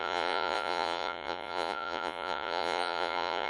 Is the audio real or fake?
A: fake